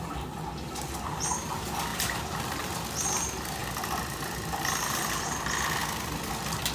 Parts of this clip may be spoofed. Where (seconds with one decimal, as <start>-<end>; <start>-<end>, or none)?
none